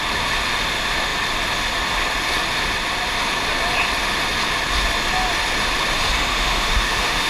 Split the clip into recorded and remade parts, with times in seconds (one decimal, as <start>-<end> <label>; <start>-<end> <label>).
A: 0.0-6.3 recorded; 6.3-7.3 remade